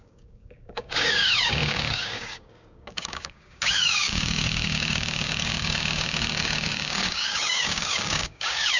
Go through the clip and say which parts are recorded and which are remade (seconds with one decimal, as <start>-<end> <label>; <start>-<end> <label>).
0.0-8.8 remade